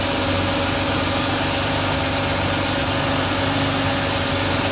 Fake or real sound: real